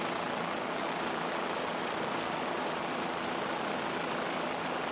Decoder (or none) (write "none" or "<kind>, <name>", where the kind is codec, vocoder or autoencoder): none